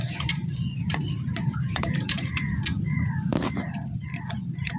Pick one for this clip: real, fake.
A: fake